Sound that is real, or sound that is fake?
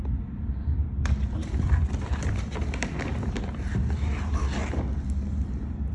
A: real